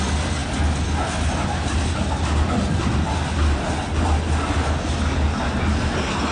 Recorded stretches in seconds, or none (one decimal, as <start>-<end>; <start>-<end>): 0.0-6.3